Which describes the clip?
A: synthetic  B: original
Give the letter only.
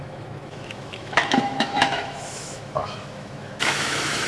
A